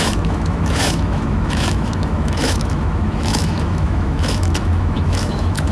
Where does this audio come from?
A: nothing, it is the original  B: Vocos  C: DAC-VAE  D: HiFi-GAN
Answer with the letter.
C